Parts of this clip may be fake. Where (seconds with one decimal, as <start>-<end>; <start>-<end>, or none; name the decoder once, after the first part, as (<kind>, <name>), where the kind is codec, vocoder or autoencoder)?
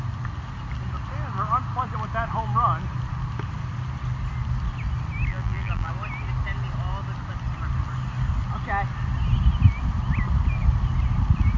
5.3-5.9 (vocoder, BigVGAN v2)